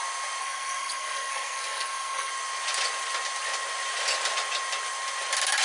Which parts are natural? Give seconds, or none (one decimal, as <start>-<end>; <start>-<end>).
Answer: 0.0-0.4; 2.3-5.6